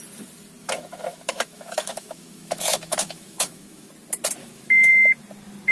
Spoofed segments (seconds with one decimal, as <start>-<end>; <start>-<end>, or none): 0.6-3.9; 4.4-4.9